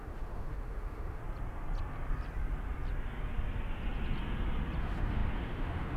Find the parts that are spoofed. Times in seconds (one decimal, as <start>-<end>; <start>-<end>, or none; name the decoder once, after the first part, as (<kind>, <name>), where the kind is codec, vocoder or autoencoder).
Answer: 0.0-1.2 (autoencoder, DAC-VAE); 4.8-6.0